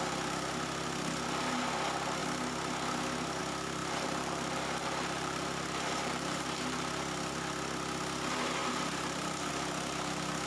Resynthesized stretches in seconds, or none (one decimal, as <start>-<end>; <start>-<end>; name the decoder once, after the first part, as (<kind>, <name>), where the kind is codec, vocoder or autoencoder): 3.8-6.9 (vocoder, BigVGAN v2); 8.6-9.5

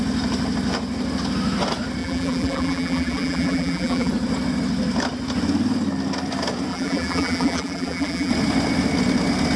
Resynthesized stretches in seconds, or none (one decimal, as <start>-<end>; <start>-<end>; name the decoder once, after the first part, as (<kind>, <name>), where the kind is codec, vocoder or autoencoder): 2.0-4.1 (vocoder, BigVGAN v2); 6.7-8.3

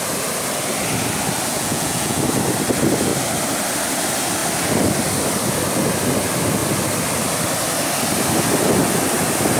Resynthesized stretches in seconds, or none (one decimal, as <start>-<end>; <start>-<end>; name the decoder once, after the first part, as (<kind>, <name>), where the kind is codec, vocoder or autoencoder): 1.5-2.2 (vocoder, Vocos)

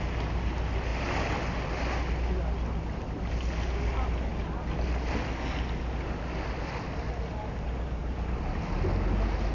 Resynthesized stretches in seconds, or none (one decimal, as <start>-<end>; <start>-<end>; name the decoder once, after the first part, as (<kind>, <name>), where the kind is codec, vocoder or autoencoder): none

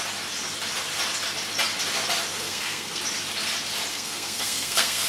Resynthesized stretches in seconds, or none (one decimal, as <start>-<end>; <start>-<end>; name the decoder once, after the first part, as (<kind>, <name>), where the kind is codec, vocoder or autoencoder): 2.3-3.0 (codec, SNAC); 3.9-5.1

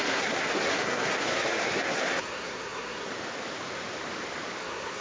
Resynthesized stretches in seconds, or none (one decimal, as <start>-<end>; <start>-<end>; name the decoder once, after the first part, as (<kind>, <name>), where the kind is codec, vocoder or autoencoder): 0.0-3.1 (codec, SNAC); 4.6-5.0

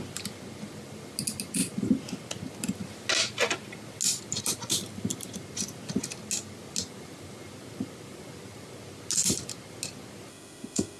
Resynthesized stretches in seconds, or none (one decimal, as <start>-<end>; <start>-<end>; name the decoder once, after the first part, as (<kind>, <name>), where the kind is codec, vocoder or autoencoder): 10.3-11.0 (autoencoder, DAC-VAE)